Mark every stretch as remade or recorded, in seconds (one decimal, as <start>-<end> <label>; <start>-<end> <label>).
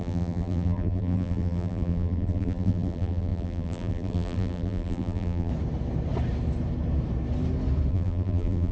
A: 0.0-5.5 remade; 5.5-7.9 recorded; 7.9-8.7 remade